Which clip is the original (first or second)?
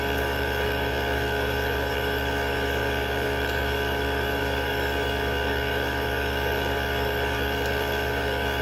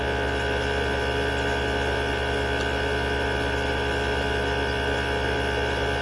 second